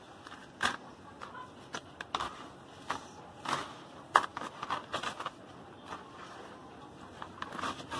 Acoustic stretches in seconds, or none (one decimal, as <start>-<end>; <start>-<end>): 0.0-8.0